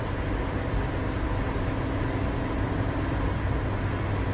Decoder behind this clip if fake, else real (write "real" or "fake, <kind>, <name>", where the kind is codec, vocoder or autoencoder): real